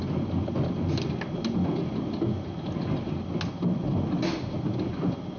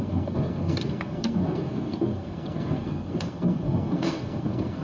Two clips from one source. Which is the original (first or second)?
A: first